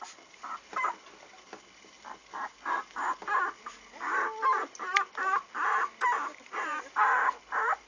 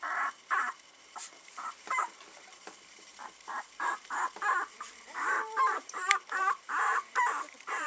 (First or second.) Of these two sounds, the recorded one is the first